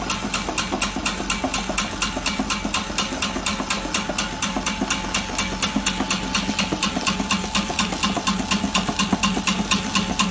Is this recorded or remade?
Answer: recorded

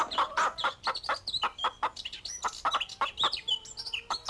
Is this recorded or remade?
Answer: recorded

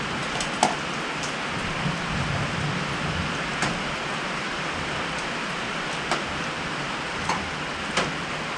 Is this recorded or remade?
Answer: recorded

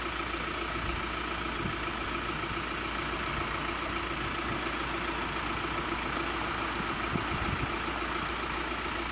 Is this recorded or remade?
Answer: recorded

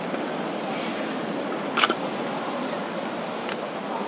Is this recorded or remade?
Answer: recorded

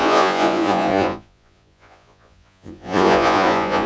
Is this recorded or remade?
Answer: remade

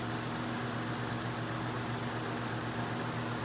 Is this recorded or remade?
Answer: recorded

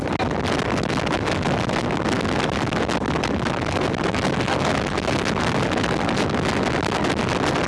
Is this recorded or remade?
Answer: recorded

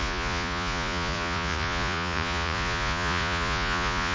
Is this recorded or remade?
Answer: remade